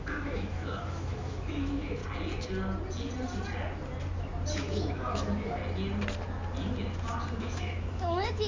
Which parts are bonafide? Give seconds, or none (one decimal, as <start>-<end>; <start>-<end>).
2.0-4.5; 5.6-7.4